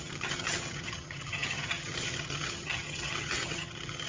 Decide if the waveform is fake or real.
fake